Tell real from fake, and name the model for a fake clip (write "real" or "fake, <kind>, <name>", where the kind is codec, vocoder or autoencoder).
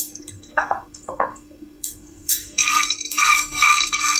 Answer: fake, codec, SNAC